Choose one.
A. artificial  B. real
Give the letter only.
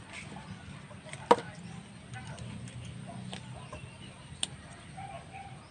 B